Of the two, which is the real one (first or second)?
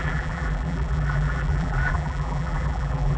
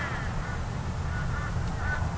second